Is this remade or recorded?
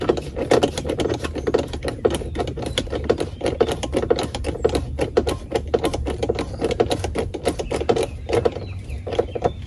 recorded